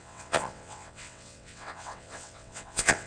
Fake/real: fake